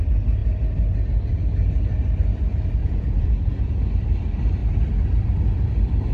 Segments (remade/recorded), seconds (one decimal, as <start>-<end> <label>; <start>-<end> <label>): 0.0-2.8 recorded; 2.8-3.9 remade; 3.9-6.1 recorded